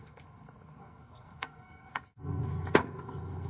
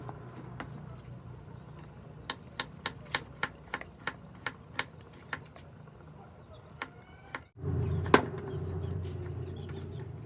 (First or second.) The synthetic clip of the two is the first